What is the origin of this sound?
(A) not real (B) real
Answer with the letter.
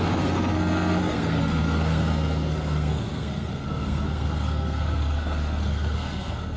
A